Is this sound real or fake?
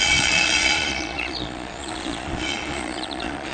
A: fake